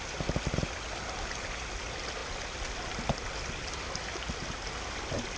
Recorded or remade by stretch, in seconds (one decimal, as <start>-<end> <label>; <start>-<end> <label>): 0.0-5.4 recorded